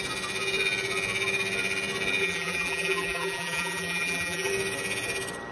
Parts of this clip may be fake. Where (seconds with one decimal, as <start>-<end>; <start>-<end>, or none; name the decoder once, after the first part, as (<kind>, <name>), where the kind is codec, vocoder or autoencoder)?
2.2-4.5 (vocoder, BigVGAN v2)